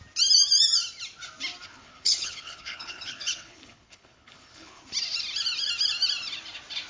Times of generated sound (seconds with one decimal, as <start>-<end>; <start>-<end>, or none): 1.7-4.8